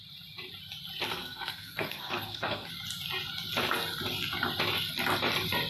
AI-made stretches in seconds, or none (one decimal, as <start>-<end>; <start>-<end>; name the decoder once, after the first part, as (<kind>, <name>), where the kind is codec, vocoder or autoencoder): 1.1-2.7 (codec, SNAC)

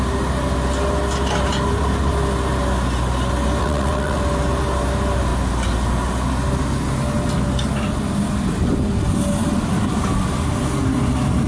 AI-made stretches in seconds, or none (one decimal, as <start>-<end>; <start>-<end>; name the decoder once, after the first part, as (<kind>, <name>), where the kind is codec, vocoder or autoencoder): 3.6-4.2 (vocoder, WaveNeXt)

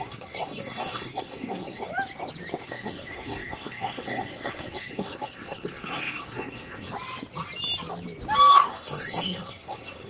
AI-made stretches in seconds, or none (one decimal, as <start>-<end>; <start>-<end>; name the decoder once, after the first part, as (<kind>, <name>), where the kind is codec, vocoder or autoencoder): 0.0-1.9 (codec, SNAC); 2.6-6.9; 8.5-10.1

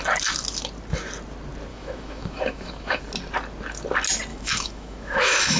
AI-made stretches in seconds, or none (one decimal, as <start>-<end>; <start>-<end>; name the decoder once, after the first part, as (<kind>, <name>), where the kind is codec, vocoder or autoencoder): 1.7-3.0 (autoencoder, DAC-VAE); 4.3-5.6

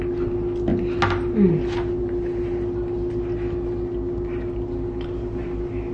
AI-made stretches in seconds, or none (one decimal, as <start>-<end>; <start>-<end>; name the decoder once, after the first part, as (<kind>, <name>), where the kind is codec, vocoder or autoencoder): none

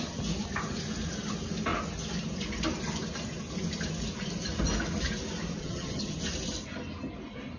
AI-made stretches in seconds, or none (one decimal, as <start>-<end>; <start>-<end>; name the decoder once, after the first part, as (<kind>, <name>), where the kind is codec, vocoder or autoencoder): 5.6-6.2 (vocoder, HiFi-GAN)

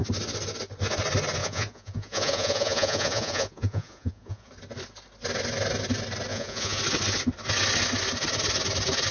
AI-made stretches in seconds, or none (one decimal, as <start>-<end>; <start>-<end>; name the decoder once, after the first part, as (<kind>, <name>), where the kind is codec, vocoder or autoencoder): 1.4-4.5 (vocoder, Vocos); 6.3-6.8